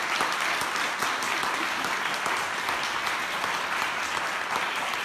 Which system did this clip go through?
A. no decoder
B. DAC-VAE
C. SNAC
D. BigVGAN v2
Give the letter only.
A